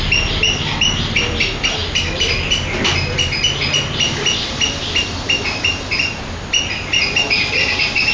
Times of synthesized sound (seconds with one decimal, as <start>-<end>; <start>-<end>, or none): none